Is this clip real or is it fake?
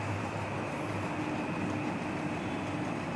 real